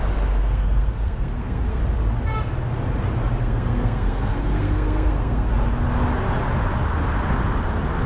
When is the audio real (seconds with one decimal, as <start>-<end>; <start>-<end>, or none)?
0.0-0.4; 1.8-3.4; 5.5-8.1